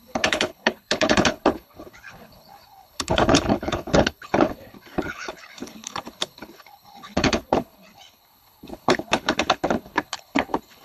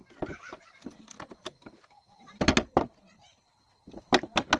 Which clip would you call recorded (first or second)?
second